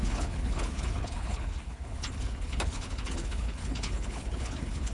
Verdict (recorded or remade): remade